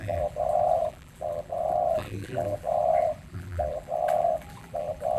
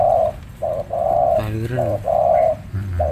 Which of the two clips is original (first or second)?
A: second